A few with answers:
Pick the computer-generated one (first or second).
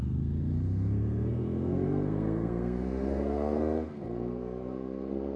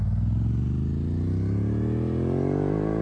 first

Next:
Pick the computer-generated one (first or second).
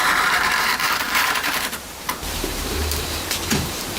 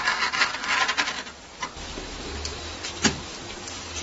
first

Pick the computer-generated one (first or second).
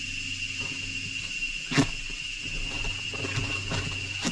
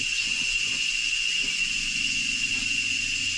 second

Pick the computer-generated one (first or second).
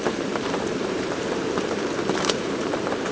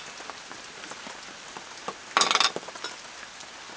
first